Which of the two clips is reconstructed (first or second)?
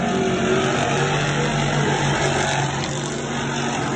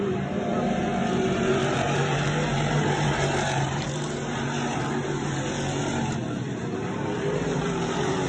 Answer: second